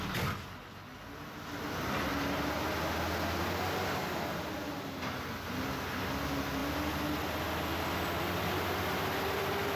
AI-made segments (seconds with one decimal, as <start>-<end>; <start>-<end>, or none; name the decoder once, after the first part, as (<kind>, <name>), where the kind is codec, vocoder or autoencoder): none